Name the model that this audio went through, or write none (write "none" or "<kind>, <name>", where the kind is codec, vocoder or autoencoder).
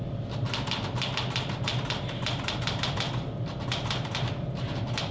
none